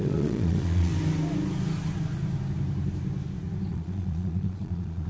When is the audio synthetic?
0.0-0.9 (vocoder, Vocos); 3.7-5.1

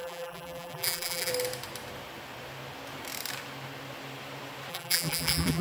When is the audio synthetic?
0.0-1.3 (vocoder, BigVGAN v2); 4.7-5.6

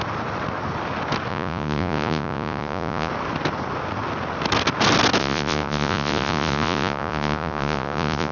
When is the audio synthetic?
1.3-3.1 (vocoder, Vocos); 5.2-8.3